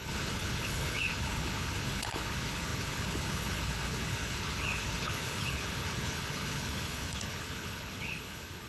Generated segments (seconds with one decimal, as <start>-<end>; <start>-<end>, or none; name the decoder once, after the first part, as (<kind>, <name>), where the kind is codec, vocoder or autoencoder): 0.0-8.7 (codec, HILCodec)